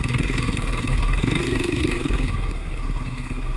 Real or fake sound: fake